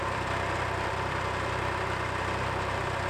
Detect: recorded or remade remade